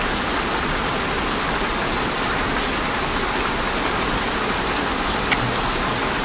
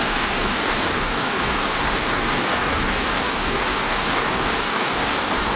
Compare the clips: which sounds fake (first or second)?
second